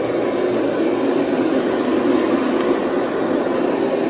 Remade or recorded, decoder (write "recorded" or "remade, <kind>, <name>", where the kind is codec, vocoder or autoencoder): recorded